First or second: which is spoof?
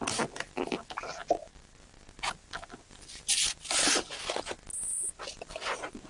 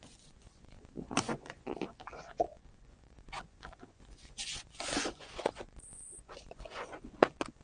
second